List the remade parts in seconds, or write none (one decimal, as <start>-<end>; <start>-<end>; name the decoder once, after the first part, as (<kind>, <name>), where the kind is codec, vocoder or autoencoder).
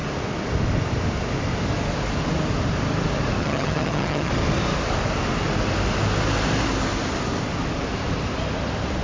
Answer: 3.4-4.3 (vocoder, HiFi-GAN)